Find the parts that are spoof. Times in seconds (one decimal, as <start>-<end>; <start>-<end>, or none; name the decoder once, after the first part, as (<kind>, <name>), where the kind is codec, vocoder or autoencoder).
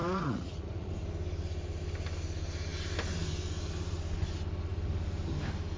0.0-0.9 (vocoder, Vocos)